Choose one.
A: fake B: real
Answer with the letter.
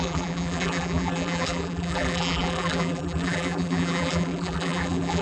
A